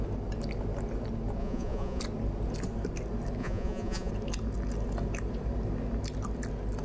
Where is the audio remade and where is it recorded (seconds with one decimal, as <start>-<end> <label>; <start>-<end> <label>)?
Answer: 0.0-1.4 recorded; 1.4-2.0 remade; 2.0-3.4 recorded; 3.4-4.1 remade; 4.1-6.8 recorded